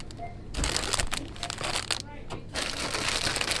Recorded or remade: recorded